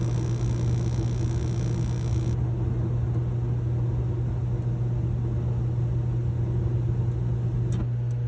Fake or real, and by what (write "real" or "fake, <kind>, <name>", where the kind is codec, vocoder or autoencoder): real